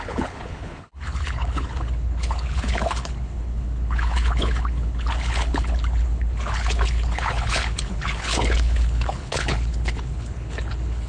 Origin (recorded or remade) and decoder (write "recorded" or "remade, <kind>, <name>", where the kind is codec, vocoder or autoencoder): remade, codec, HILCodec